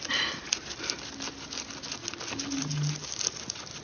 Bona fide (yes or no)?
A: yes